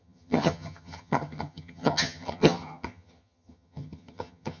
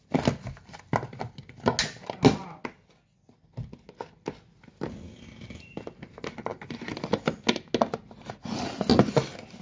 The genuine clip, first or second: second